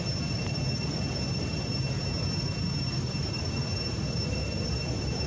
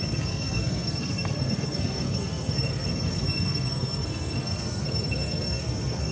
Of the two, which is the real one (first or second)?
first